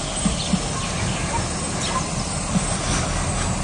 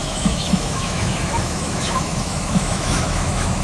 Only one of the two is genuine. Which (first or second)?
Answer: first